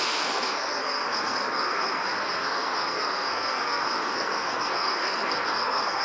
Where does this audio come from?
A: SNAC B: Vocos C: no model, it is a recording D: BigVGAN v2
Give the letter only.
A